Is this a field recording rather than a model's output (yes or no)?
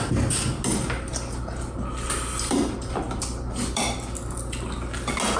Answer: yes